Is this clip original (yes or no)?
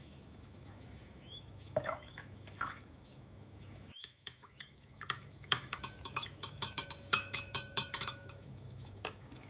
no